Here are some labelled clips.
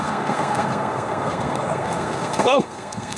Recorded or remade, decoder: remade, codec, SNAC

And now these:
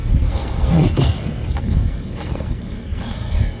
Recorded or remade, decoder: remade, codec, SNAC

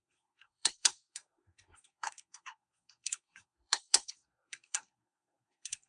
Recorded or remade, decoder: remade, codec, SNAC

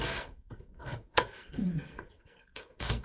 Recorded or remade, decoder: remade, codec, SNAC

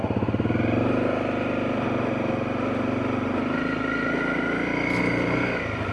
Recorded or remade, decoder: recorded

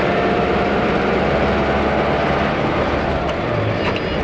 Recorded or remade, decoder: recorded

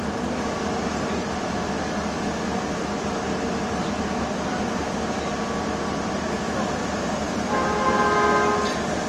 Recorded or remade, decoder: recorded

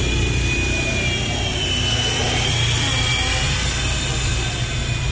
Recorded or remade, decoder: recorded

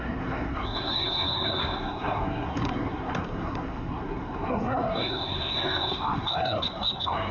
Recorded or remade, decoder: remade, codec, SNAC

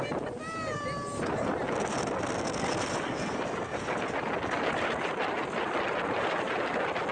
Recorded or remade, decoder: recorded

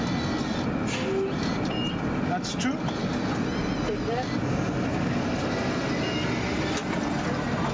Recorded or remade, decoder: recorded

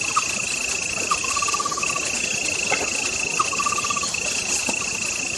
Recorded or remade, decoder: recorded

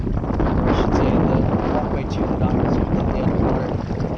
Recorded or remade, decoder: recorded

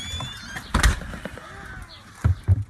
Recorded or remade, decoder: recorded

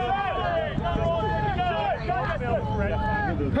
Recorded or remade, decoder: recorded